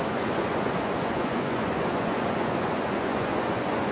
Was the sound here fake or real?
fake